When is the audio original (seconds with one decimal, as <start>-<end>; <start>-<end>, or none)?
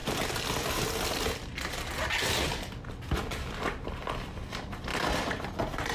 0.0-2.9